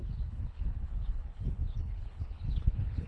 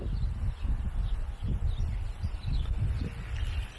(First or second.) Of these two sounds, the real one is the second